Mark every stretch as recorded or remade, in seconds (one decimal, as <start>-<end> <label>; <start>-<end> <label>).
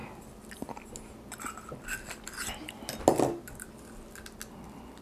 0.0-5.0 recorded